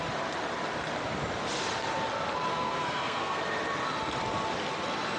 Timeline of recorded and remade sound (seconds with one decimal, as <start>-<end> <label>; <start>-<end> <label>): 0.0-2.5 recorded; 2.5-3.4 remade; 3.4-5.2 recorded